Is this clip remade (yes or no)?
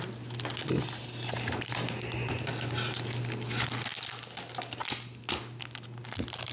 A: no